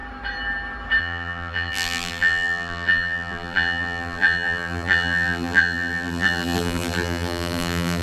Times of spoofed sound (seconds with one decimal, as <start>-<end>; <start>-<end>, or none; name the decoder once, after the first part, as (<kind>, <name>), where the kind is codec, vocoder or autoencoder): 1.0-8.0 (vocoder, BigVGAN v2)